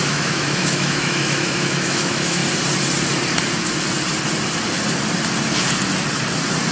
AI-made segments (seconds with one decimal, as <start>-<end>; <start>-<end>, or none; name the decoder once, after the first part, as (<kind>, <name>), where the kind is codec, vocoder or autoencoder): 0.0-2.4 (autoencoder, DAC-VAE)